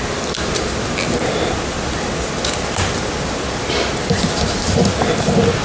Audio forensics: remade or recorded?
remade